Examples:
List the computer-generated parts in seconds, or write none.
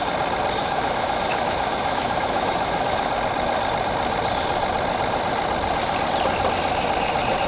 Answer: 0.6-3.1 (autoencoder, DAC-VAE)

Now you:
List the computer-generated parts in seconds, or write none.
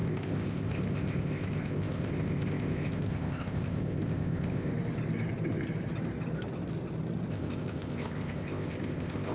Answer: 0.0-4.7 (codec, ZipCodec); 7.3-9.3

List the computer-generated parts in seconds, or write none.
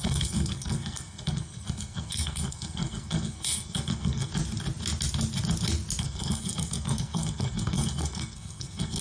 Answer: 0.0-4.3 (codec, SNAC); 6.0-9.0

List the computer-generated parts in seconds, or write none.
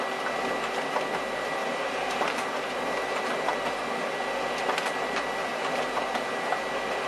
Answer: 1.6-3.9 (vocoder, BigVGAN v2); 5.5-6.6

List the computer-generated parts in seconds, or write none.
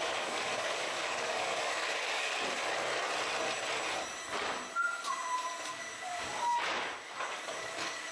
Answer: 0.0-2.3 (codec, DAC); 5.7-8.1